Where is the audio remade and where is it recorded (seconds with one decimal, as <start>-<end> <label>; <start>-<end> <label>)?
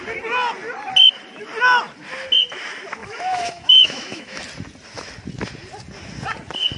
0.0-3.0 recorded; 3.0-4.4 remade; 4.4-6.8 recorded